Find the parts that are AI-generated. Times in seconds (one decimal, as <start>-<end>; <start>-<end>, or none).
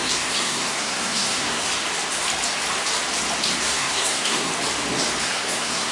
0.0-1.7; 3.6-4.5; 5.2-5.9